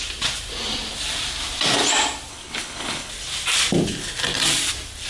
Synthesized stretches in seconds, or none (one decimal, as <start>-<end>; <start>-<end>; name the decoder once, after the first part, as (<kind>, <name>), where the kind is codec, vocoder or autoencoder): 2.3-3.1 (codec, HILCodec)